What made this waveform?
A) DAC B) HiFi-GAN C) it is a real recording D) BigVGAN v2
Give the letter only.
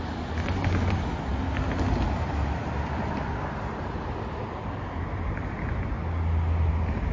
C